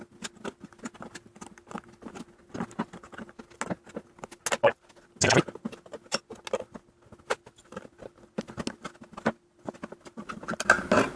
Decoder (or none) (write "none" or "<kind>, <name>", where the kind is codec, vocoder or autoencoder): none